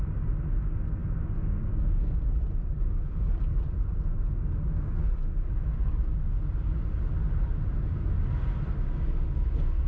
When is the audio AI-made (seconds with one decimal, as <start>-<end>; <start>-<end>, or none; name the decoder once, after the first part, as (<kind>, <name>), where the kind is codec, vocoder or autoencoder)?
1.0-2.2 (codec, DAC)